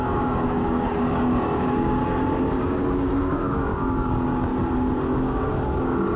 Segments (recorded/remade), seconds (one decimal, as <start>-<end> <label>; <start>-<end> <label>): 0.0-2.0 remade; 2.0-2.6 recorded; 2.6-4.5 remade; 4.5-5.1 recorded; 5.1-6.2 remade